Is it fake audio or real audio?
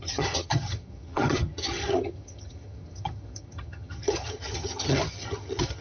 fake